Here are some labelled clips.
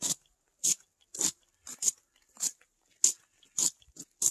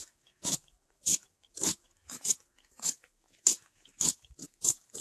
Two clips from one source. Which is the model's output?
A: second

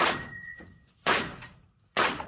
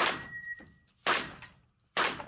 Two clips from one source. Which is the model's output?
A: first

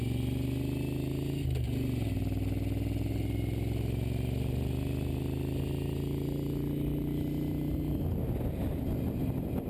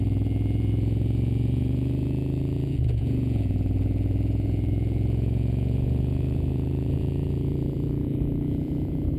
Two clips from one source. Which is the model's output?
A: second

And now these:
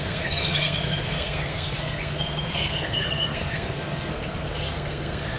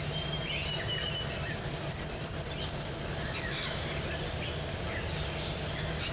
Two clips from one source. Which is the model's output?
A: first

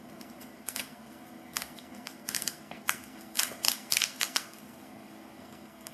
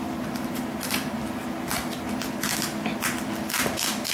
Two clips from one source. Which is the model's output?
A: first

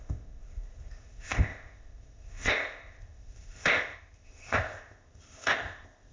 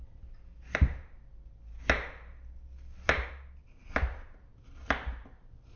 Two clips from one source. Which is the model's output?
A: first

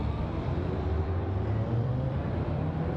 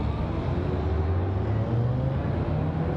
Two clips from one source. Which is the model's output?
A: first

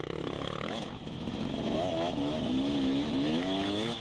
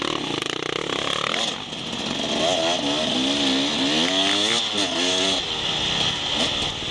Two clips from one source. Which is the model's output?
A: first